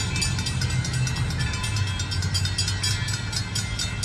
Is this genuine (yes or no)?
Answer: yes